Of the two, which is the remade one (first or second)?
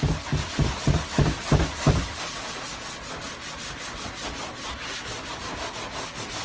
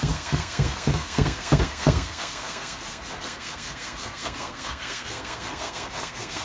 second